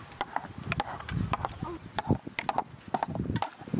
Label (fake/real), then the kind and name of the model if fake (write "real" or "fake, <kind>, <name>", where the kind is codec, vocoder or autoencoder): real